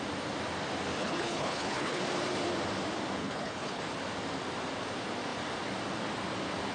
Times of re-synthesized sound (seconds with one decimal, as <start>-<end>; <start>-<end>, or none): 1.0-2.0; 3.2-3.8